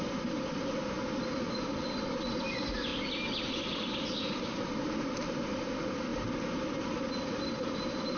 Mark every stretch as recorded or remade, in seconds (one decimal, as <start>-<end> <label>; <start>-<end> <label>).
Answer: 0.0-2.9 remade; 2.9-3.6 recorded; 3.6-6.1 remade; 6.1-7.3 recorded; 7.3-8.2 remade